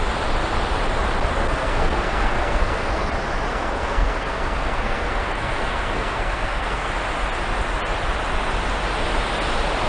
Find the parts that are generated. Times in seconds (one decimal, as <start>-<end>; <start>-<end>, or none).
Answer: 1.4-3.1; 3.5-6.9